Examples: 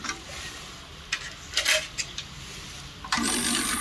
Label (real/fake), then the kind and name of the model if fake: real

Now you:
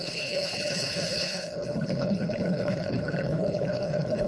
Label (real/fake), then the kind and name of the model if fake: fake, codec, HILCodec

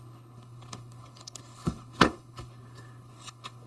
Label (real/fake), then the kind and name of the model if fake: fake, codec, HILCodec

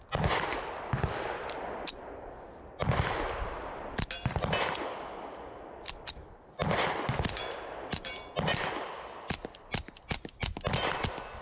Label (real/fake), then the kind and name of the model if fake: real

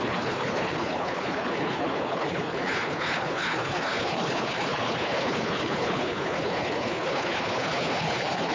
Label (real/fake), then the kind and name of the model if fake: fake, codec, HILCodec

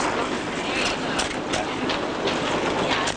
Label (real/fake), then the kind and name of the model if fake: real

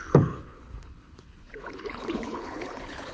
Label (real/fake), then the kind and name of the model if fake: fake, codec, HILCodec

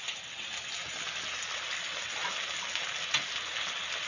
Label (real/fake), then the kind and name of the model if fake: real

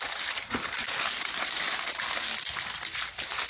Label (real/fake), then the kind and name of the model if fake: real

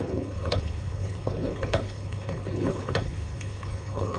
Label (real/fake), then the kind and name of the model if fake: fake, codec, HILCodec